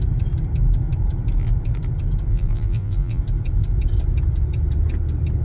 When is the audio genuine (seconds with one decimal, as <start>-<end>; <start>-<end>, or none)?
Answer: 0.0-2.3; 3.2-5.4